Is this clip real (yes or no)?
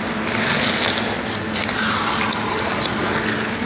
yes